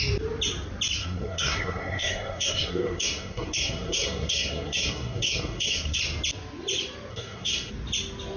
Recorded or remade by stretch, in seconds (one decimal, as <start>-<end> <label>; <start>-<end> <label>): 0.0-1.0 recorded; 1.0-6.0 remade; 6.0-7.1 recorded; 7.1-7.7 remade; 7.7-8.4 recorded

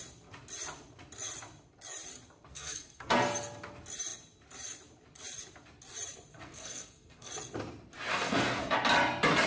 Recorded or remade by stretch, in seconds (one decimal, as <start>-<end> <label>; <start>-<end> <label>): 0.0-2.5 recorded; 2.5-3.1 remade; 3.1-6.3 recorded; 6.3-7.3 remade; 7.3-8.1 recorded; 8.1-8.7 remade; 8.7-9.5 recorded